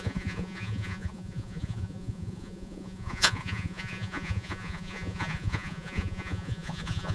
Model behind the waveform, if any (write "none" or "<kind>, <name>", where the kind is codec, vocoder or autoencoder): vocoder, Vocos